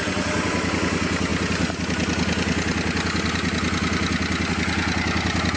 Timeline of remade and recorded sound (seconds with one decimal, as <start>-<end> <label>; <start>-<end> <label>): 0.0-5.6 recorded